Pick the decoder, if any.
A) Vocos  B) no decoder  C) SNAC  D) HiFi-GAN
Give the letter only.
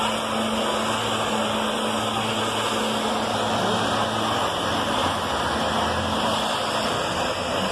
B